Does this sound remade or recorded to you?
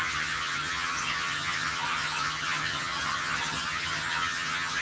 remade